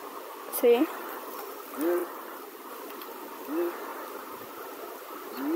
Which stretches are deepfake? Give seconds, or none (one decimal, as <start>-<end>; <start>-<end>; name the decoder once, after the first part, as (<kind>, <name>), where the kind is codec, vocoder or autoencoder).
2.0-2.7 (vocoder, BigVGAN v2)